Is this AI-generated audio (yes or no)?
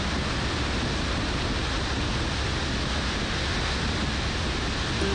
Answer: no